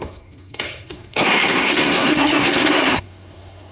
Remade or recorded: remade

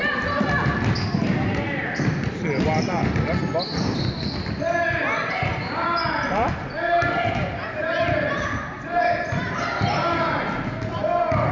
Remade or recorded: recorded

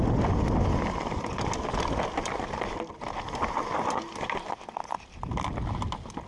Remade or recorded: recorded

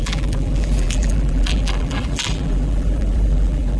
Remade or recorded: remade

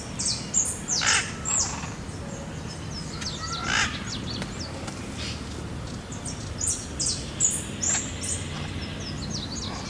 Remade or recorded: recorded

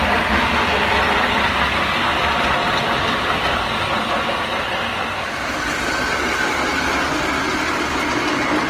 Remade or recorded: recorded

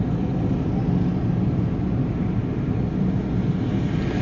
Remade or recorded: recorded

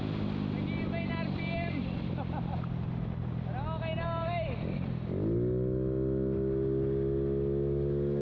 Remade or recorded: recorded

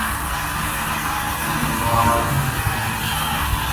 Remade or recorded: remade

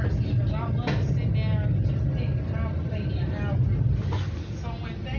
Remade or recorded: recorded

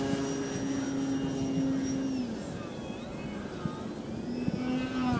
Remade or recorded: recorded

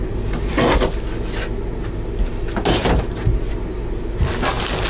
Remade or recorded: recorded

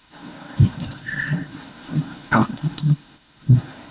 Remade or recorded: remade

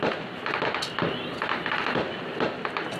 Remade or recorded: recorded